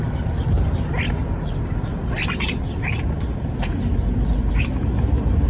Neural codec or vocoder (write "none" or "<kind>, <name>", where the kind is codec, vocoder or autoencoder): none